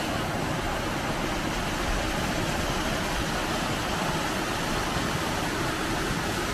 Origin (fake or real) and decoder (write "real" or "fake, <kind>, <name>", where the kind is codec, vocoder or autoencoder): real